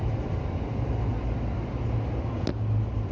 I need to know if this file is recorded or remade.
recorded